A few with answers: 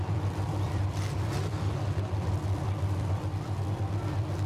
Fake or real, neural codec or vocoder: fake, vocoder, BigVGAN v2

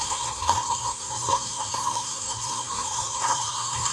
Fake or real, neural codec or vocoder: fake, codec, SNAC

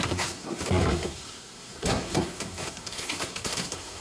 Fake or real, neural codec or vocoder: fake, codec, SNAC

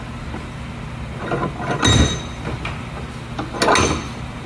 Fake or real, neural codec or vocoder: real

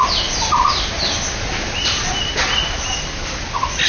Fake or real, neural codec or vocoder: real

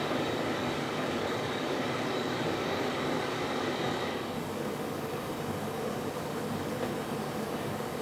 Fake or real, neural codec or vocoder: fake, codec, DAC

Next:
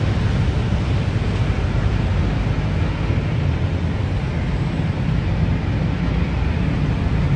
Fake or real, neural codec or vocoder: real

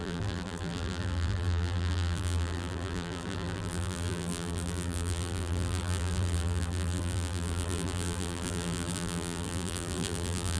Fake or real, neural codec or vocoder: fake, vocoder, BigVGAN v2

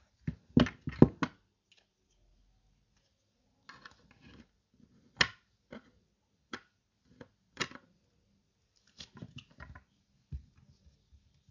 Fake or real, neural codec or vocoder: real